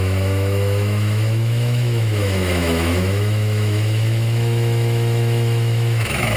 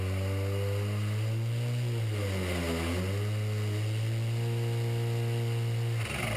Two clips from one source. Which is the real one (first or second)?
second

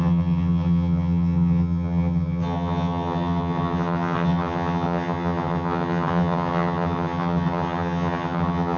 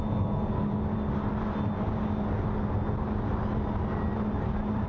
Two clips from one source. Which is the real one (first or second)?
second